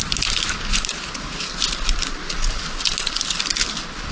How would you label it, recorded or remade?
recorded